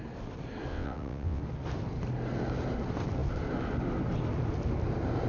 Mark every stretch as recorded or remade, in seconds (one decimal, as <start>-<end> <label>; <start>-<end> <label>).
0.0-0.7 recorded; 0.7-1.4 remade; 1.4-5.3 recorded